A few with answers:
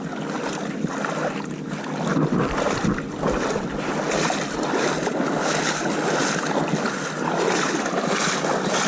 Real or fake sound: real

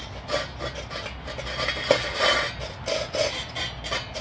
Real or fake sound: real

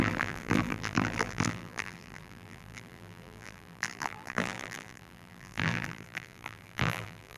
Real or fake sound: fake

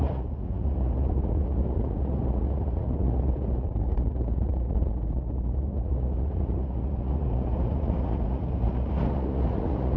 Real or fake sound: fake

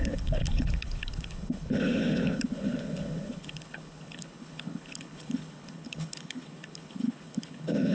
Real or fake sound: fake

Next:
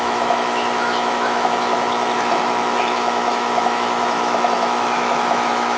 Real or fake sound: fake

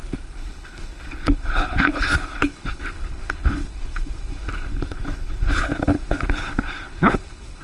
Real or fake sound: fake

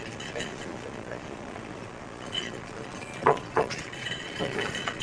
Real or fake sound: fake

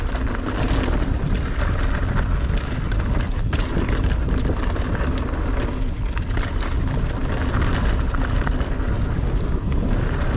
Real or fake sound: real